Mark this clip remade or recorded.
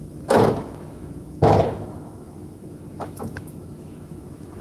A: remade